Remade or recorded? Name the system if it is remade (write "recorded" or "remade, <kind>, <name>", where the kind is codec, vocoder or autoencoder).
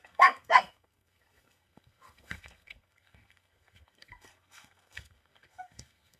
remade, codec, SNAC